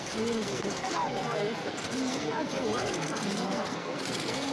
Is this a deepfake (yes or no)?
yes